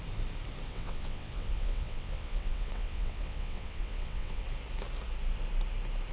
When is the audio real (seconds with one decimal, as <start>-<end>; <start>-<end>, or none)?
0.0-0.7; 4.4-6.1